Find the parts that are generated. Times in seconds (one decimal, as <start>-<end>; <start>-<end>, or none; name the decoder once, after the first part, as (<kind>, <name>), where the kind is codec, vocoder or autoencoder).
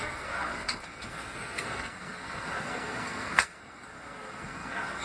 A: 0.0-5.0 (codec, SNAC)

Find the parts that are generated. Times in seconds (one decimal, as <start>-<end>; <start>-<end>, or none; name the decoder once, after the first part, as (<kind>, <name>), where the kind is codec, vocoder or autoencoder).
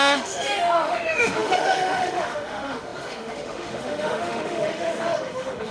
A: 0.0-5.7 (autoencoder, DAC-VAE)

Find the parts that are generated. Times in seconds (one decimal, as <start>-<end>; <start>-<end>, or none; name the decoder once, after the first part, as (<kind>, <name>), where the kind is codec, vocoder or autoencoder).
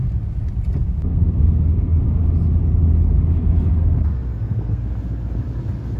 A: 1.1-2.0 (codec, SNAC); 3.7-4.8